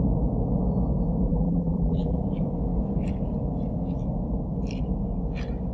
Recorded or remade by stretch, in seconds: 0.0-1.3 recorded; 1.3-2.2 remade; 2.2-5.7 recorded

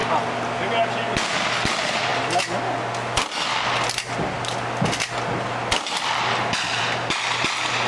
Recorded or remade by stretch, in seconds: 0.0-7.9 recorded

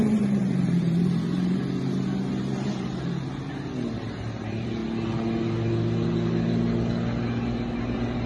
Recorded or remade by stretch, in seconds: 0.0-1.6 remade; 1.6-2.4 recorded; 2.4-4.8 remade; 4.8-7.8 recorded; 7.8-8.3 remade

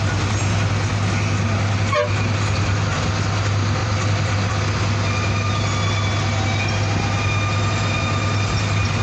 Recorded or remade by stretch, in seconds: 0.0-3.8 recorded; 3.8-4.5 remade; 4.5-9.0 recorded

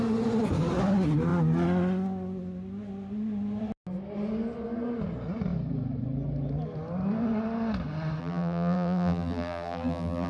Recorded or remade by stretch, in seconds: 0.0-8.2 recorded; 8.2-10.3 remade

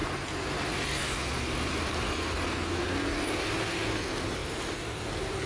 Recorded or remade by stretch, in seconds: 0.0-4.4 recorded; 4.4-5.1 remade; 5.1-5.5 recorded

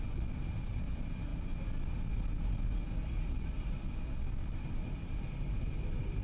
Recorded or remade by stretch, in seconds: 0.0-1.3 remade; 1.3-2.3 recorded; 2.3-6.2 remade

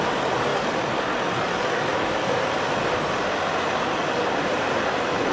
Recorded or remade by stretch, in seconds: 0.0-0.5 recorded; 0.5-3.7 remade; 3.7-5.3 recorded